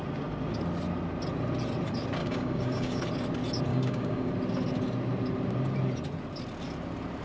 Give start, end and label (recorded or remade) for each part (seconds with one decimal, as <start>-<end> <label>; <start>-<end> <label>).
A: 0.0-2.2 recorded; 2.2-3.0 remade; 3.0-3.7 recorded; 3.7-4.3 remade; 4.3-7.2 recorded